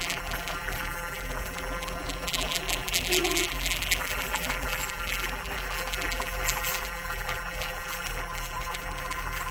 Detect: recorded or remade remade